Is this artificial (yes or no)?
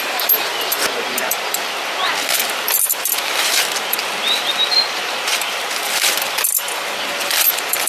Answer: yes